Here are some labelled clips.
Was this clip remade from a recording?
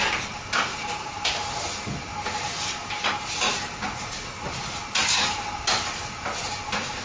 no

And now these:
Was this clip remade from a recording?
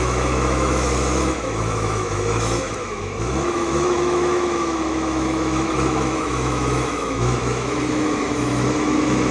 yes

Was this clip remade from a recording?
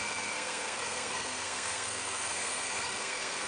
yes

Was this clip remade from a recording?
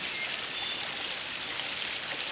no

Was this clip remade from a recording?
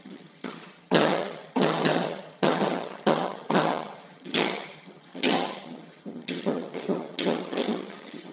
yes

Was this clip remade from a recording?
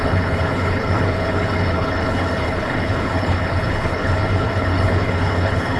yes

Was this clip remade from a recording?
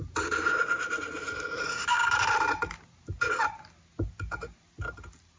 no